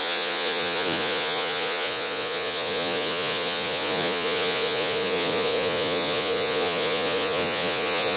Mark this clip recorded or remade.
remade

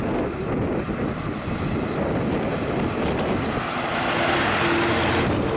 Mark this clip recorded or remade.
recorded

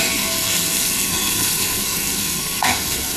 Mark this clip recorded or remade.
remade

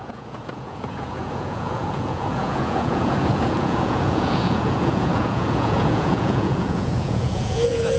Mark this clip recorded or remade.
remade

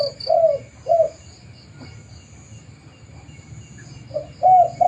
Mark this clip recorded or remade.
recorded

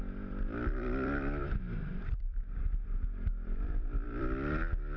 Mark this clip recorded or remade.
remade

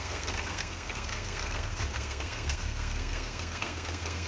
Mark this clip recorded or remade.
remade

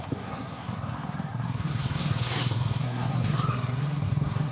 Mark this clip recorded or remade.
remade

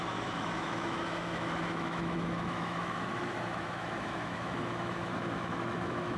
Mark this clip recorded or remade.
remade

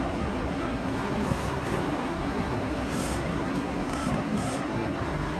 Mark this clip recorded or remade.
remade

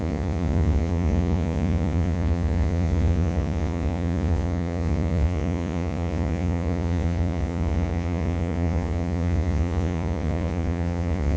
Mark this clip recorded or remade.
remade